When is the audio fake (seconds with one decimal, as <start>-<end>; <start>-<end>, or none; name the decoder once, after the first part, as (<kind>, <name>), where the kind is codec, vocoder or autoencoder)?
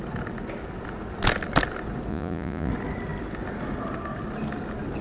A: 2.1-2.7 (vocoder, Vocos)